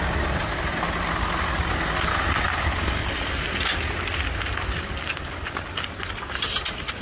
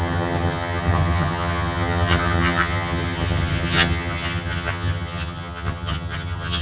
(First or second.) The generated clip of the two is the second